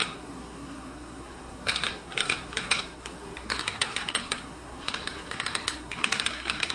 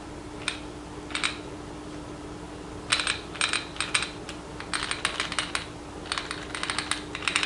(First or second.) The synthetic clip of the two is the first